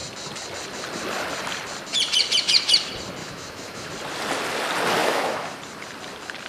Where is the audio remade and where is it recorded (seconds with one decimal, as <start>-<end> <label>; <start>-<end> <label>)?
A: 0.0-3.2 recorded; 3.2-3.9 remade; 3.9-5.0 recorded; 5.0-5.6 remade; 5.6-6.5 recorded